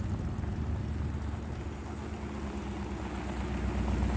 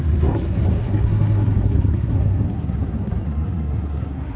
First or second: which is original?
first